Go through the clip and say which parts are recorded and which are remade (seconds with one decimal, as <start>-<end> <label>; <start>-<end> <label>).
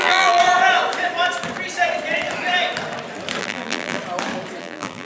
0.0-0.4 remade; 0.4-3.4 recorded; 3.4-4.0 remade; 4.0-4.6 recorded; 4.6-5.0 remade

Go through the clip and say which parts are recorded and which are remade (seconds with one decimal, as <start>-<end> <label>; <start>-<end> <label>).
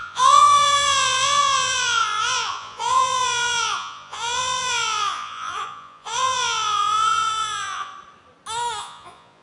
0.0-7.9 remade; 7.9-8.8 recorded; 8.8-9.4 remade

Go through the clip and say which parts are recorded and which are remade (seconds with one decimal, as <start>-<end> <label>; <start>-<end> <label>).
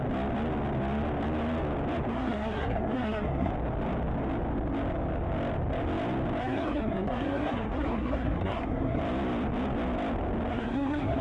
0.0-2.1 recorded; 2.1-3.5 remade; 3.5-6.4 recorded; 6.4-9.0 remade; 9.0-10.5 recorded; 10.5-11.2 remade